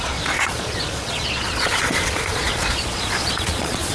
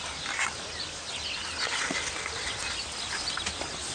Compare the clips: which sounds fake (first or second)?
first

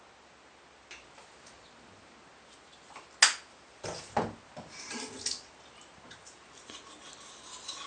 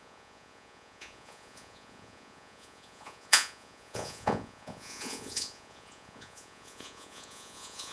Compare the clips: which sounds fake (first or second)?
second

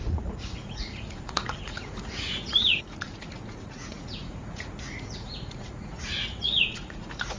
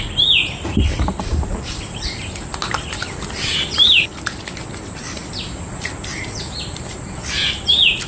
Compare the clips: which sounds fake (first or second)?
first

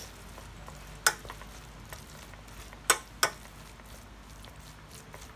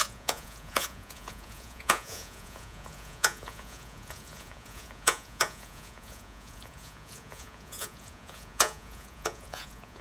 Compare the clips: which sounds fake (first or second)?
second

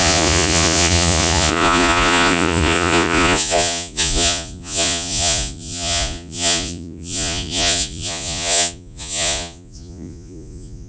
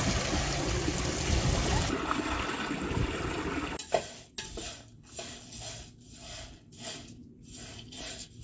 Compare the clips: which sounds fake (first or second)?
first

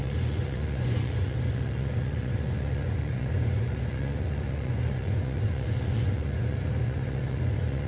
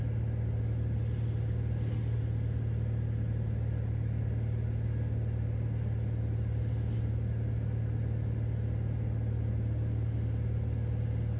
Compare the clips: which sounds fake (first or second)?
first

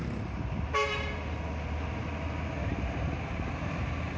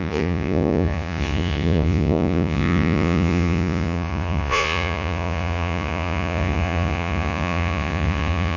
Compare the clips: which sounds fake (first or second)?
second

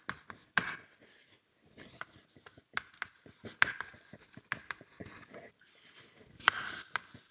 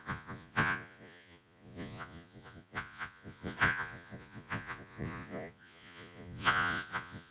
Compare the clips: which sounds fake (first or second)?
second